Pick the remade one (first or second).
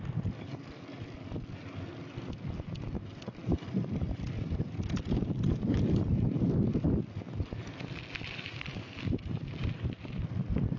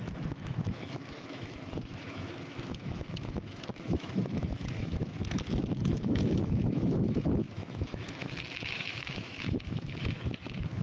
second